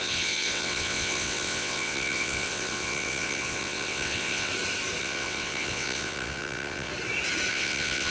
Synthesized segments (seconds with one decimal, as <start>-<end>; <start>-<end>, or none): 0.0-4.5; 5.0-6.9; 7.5-8.1